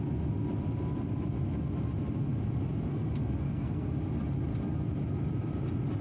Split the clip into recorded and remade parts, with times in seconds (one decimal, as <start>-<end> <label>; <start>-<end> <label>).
0.0-2.9 recorded; 2.9-3.9 remade; 3.9-6.0 recorded